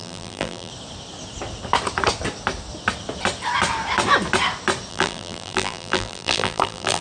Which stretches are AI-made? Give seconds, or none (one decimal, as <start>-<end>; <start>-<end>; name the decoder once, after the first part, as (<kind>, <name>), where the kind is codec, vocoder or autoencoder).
0.0-0.7 (vocoder, BigVGAN v2); 4.9-7.0